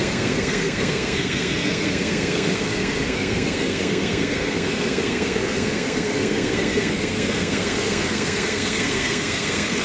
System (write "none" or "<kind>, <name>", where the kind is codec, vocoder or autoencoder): codec, SNAC